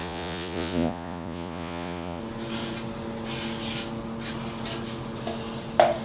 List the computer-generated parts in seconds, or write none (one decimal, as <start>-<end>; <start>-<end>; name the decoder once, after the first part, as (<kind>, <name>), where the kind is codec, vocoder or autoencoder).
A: 0.0-2.2 (vocoder, Vocos)